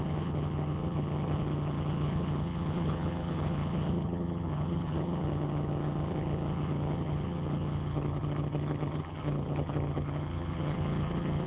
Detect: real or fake fake